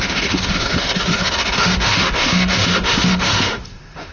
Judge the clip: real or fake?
fake